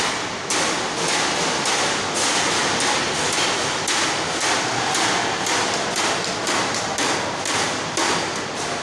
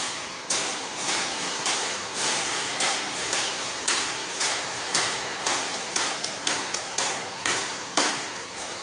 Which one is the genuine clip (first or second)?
first